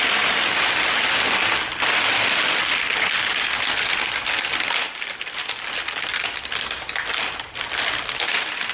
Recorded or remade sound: recorded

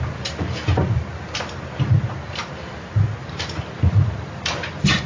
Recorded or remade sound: recorded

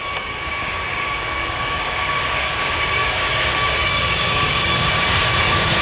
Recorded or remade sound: remade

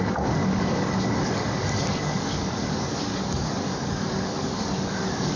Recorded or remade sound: remade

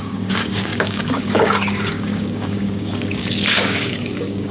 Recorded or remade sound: remade